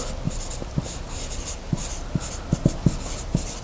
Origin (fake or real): real